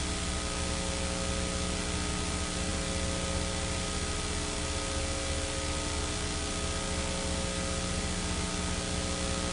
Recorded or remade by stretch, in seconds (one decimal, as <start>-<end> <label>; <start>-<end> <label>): 0.0-9.5 recorded